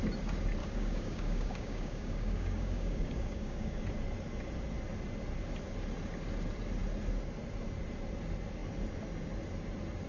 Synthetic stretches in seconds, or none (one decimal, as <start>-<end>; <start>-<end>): 0.6-3.8